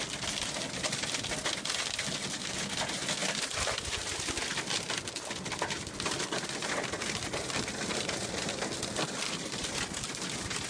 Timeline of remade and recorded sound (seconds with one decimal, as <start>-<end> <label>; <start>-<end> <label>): 0.0-10.7 recorded